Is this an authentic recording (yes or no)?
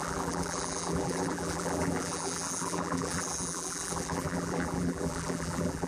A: no